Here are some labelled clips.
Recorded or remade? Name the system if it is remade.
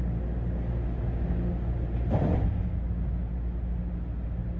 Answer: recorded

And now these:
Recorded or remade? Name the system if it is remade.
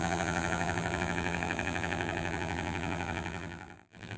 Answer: remade, vocoder, BigVGAN v2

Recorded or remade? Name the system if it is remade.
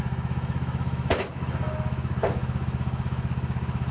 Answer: remade, autoencoder, DAC-VAE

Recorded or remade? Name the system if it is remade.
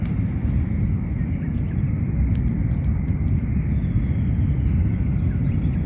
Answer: recorded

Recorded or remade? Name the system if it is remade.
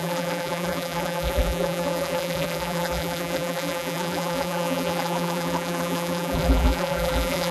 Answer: remade, vocoder, BigVGAN v2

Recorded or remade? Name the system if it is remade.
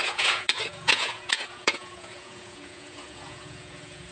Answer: remade, vocoder, Vocos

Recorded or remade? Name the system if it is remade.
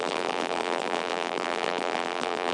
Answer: remade, vocoder, BigVGAN v2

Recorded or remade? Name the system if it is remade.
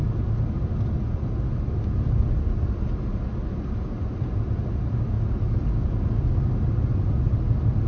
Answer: recorded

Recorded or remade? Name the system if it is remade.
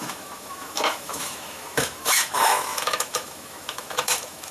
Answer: remade, autoencoder, DAC-VAE